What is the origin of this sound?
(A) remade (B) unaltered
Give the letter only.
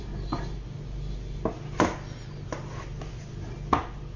B